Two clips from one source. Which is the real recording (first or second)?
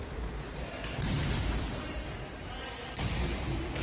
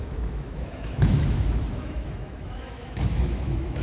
first